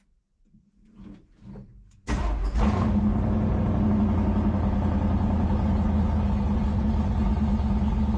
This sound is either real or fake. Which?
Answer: real